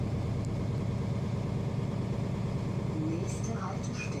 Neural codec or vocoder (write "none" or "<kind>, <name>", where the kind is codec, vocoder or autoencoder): none